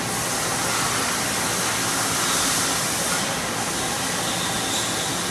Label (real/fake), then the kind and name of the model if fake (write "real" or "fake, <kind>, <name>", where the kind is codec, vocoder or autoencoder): real